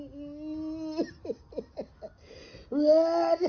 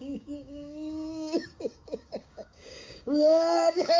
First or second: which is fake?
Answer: second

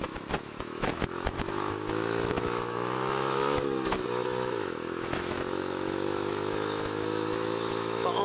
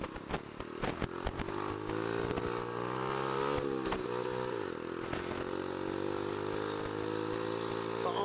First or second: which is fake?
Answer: first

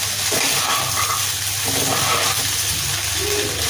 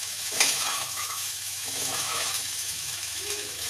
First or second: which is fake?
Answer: second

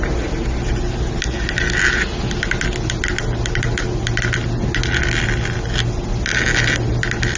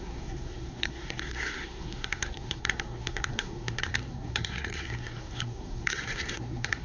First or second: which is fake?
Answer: second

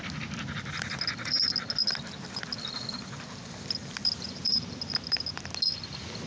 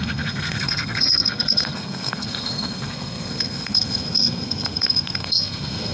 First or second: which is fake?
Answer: second